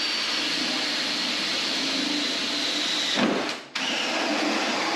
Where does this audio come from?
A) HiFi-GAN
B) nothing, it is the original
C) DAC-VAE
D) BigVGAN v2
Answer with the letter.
B